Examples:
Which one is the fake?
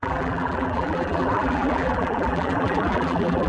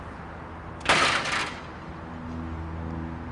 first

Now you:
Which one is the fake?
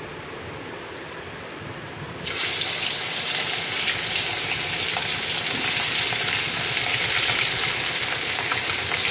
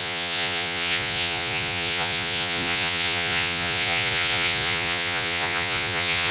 second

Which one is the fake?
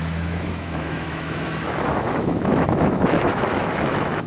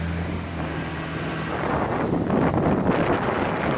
first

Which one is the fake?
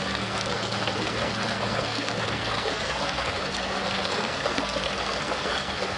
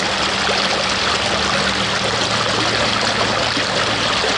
first